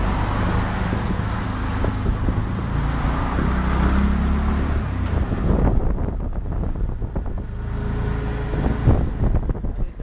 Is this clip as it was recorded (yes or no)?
yes